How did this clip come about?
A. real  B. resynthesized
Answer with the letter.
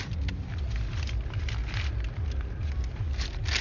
A